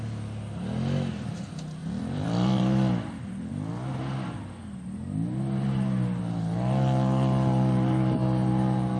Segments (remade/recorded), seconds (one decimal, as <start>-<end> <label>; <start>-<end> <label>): 0.0-1.8 recorded; 1.8-3.5 remade; 3.5-9.0 recorded